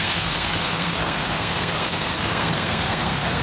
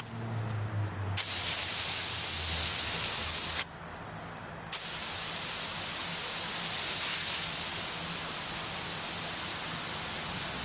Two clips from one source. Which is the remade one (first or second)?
first